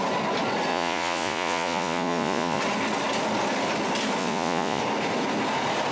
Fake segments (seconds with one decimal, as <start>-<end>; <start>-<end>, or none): 0.7-2.6; 4.2-4.8